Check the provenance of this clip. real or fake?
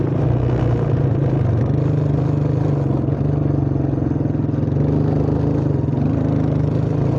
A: real